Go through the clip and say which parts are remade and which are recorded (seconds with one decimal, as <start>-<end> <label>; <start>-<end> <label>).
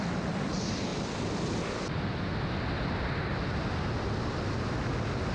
0.0-5.3 recorded